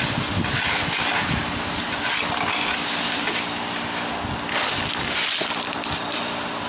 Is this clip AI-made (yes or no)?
no